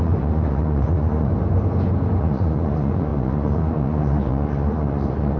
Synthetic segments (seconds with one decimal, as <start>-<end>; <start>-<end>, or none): 0.0-1.3; 2.2-5.4

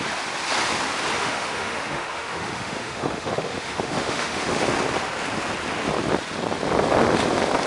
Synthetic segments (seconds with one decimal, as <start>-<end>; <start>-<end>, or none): 1.2-4.6

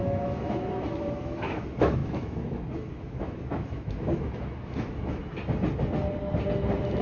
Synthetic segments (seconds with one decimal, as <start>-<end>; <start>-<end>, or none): 0.0-5.2

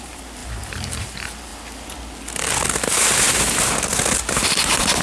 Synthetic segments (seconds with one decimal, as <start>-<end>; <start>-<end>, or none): 0.0-1.5; 4.3-5.0

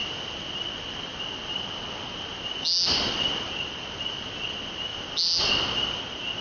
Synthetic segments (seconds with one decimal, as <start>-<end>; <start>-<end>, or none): none

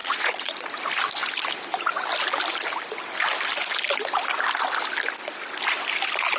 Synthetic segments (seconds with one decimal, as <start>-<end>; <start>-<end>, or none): 0.0-0.7

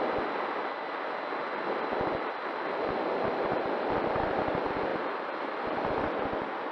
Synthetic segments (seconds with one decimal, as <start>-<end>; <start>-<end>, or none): 4.9-6.0